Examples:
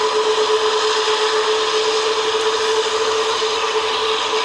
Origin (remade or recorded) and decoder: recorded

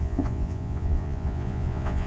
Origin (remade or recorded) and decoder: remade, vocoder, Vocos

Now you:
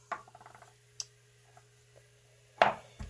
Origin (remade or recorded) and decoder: recorded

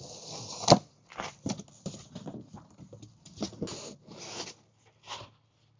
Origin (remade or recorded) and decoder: recorded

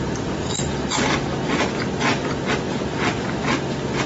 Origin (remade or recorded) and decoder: recorded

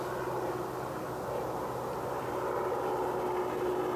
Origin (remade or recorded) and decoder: recorded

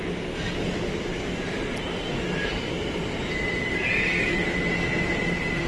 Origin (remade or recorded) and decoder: recorded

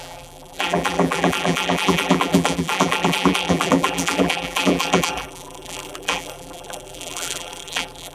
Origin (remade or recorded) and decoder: remade, vocoder, BigVGAN v2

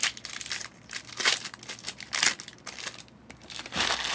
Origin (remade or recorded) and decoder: recorded